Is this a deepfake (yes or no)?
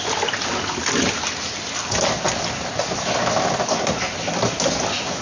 no